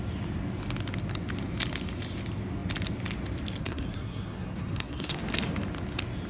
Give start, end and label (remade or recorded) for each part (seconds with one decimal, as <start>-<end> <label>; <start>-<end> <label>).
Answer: 0.0-3.6 recorded; 3.6-5.2 remade; 5.2-6.3 recorded